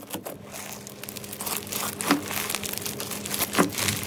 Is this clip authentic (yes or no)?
yes